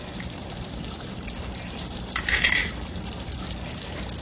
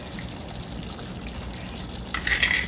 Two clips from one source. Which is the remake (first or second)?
first